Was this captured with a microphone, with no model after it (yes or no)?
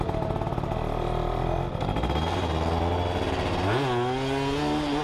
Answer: yes